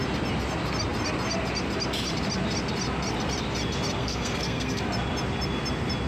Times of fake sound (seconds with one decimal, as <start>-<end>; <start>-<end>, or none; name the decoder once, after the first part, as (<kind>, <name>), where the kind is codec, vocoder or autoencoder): 4.0-4.8 (codec, SNAC)